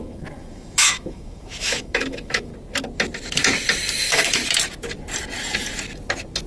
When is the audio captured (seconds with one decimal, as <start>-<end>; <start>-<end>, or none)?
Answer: 2.5-4.0; 4.4-6.5